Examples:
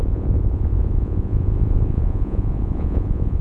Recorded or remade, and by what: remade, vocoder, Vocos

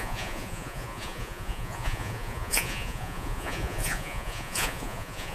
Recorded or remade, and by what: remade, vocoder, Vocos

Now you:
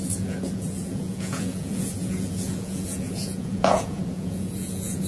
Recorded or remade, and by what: remade, vocoder, Vocos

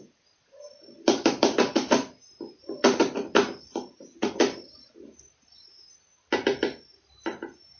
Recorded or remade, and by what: recorded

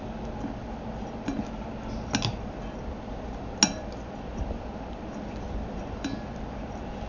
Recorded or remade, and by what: recorded